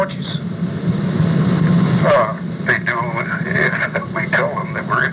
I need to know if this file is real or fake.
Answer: real